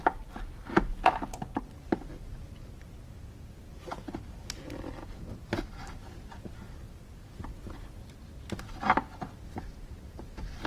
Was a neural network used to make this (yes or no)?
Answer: no